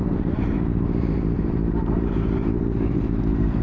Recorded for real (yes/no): no